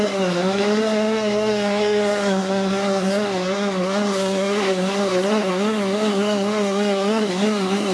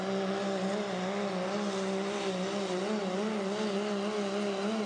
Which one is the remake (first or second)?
first